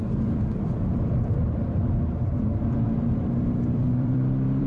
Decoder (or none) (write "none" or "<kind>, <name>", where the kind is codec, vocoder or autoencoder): vocoder, BigVGAN v2